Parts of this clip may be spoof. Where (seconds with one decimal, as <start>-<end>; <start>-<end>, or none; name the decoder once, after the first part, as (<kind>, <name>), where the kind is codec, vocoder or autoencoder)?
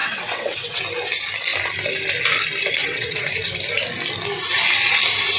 0.0-0.8 (vocoder, WaveNeXt); 2.8-3.3